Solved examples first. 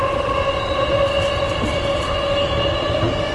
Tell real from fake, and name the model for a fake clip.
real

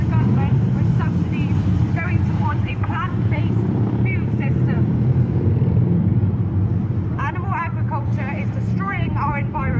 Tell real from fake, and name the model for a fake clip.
fake, vocoder, BigVGAN v2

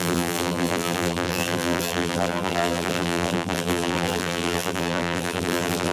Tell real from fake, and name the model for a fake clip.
fake, vocoder, BigVGAN v2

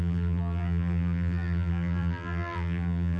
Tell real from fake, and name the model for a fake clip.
fake, vocoder, BigVGAN v2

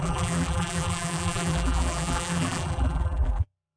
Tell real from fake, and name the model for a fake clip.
fake, vocoder, BigVGAN v2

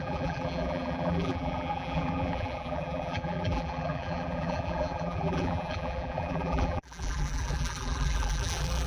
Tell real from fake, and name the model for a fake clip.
fake, vocoder, BigVGAN v2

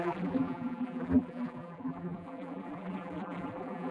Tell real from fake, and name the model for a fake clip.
fake, vocoder, BigVGAN v2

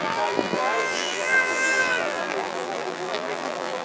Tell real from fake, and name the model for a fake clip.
fake, vocoder, BigVGAN v2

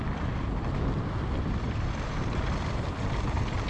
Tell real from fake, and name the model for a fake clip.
fake, vocoder, BigVGAN v2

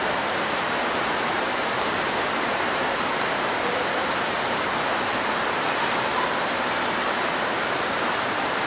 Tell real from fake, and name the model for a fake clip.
fake, vocoder, BigVGAN v2